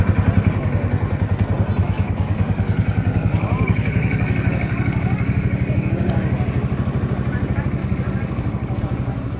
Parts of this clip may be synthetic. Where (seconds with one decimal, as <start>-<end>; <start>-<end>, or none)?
1.8-5.9; 7.8-8.8